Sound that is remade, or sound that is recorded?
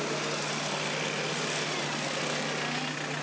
recorded